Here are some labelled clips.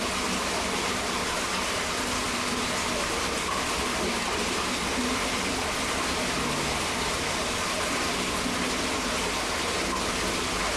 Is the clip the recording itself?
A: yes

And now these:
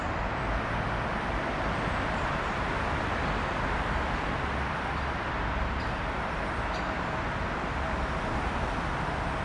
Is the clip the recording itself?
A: yes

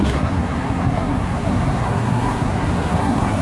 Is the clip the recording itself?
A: no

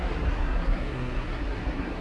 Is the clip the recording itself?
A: no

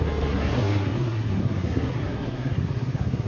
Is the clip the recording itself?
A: no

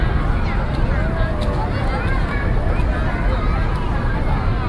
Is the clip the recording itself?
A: yes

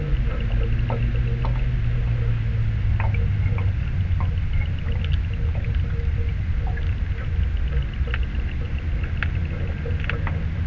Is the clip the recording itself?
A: yes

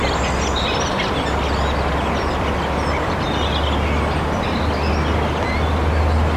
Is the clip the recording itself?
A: yes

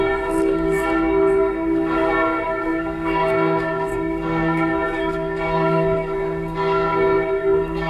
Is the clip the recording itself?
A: no